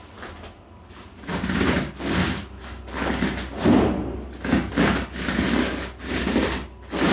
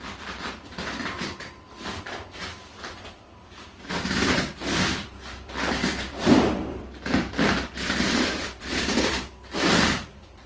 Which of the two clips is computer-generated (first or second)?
second